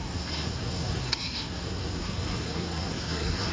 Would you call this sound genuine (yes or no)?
no